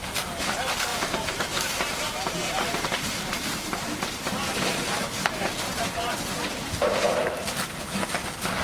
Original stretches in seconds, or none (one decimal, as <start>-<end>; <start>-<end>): 0.0-0.9; 5.5-6.4; 7.2-8.6